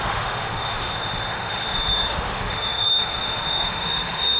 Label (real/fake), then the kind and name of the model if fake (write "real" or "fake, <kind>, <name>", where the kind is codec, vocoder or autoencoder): fake, autoencoder, DAC-VAE